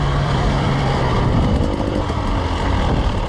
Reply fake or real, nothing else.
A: fake